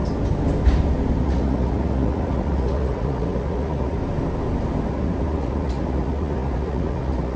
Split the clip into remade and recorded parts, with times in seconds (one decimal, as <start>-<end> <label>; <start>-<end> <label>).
0.0-1.2 recorded; 1.2-4.0 remade; 4.0-4.9 recorded; 4.9-7.4 remade